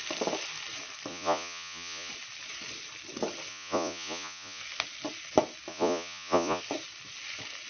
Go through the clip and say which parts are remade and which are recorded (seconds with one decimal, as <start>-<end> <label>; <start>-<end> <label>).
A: 0.0-1.1 recorded; 1.1-2.1 remade; 2.1-3.5 recorded; 3.5-4.6 remade; 4.6-5.7 recorded; 5.7-6.6 remade; 6.6-7.7 recorded